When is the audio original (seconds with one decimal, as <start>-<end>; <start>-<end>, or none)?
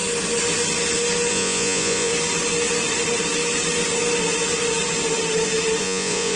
0.0-1.3; 2.1-5.8